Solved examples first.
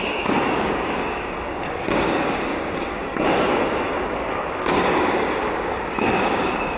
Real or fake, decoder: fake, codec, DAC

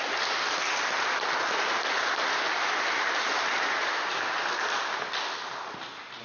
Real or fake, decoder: real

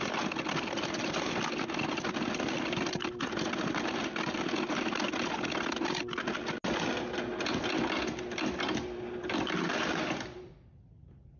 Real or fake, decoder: real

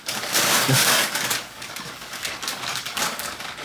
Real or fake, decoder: fake, codec, DAC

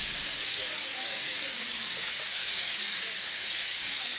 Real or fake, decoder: fake, codec, DAC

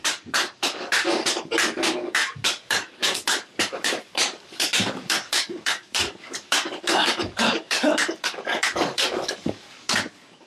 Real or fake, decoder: fake, codec, DAC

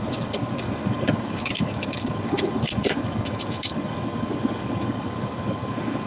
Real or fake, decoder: fake, codec, DAC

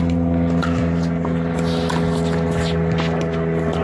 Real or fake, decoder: real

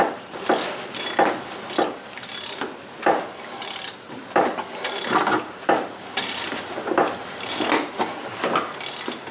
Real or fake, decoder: real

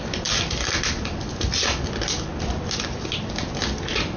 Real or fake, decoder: real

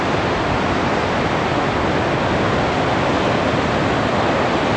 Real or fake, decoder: real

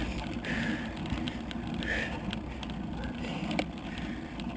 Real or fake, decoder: real